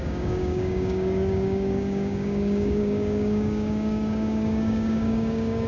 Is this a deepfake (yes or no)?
yes